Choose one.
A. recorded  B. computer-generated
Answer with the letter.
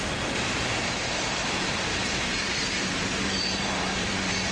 B